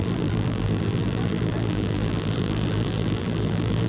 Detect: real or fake fake